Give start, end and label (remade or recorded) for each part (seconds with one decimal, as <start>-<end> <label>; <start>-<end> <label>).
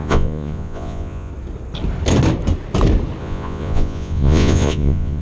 0.0-1.3 remade; 1.3-3.2 recorded; 3.2-5.2 remade